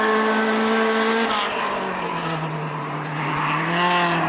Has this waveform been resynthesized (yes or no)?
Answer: no